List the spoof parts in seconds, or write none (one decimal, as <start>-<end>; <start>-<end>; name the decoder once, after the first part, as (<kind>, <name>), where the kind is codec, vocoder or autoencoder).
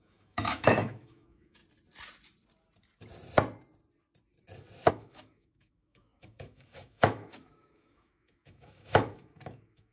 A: 0.0-1.6 (autoencoder, DAC-VAE); 4.9-9.9